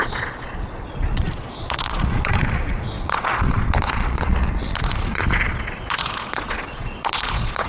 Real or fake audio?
fake